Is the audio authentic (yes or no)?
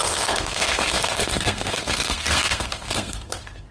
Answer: no